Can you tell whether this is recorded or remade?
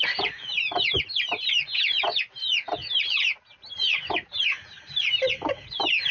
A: recorded